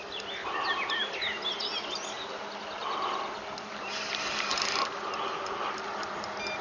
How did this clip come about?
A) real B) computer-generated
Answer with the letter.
A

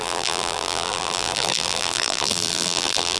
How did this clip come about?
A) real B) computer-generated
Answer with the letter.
B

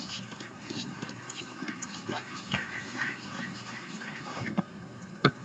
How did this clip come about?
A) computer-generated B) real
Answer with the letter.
A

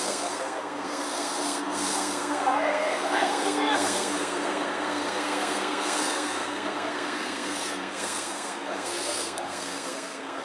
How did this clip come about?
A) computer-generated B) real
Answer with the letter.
A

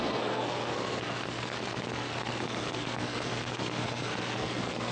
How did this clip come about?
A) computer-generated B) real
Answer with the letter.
A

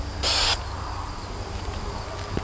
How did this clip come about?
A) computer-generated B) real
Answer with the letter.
B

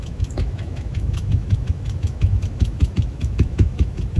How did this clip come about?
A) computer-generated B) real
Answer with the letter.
A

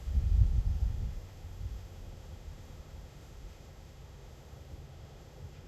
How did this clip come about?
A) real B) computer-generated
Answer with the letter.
B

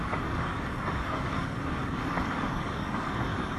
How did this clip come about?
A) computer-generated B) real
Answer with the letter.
A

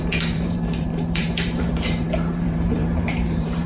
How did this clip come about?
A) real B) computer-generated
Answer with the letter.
B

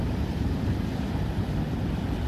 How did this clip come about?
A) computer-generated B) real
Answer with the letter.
B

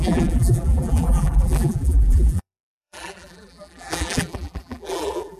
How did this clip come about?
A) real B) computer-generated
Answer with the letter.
B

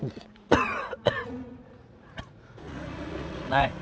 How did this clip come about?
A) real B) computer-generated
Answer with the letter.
B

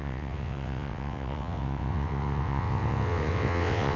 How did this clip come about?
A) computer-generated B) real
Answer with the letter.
A